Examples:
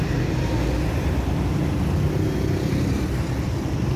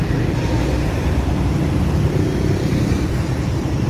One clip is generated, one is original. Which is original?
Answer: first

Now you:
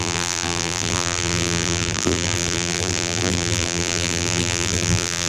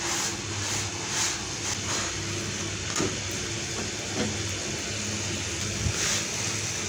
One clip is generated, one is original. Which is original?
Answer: second